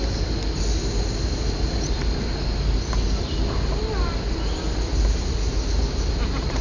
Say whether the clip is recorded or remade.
recorded